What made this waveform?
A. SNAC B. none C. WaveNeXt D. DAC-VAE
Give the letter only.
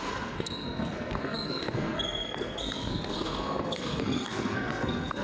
A